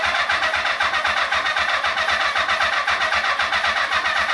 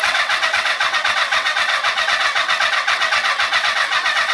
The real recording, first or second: first